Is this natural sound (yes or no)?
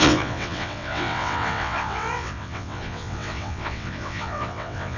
no